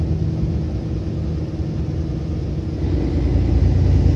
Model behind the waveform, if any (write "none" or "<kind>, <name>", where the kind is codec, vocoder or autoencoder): none